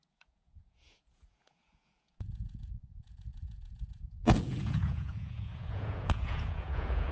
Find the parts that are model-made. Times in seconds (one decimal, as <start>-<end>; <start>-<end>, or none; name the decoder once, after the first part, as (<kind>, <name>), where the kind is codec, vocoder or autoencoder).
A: 0.0-7.1 (vocoder, Vocos)